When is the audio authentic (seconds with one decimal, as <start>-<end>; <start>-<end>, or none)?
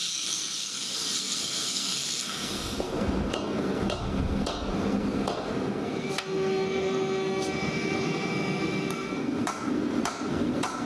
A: none